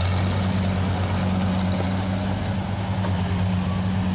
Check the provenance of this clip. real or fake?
real